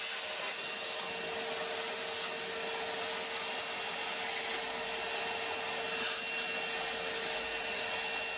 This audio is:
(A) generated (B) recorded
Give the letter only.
B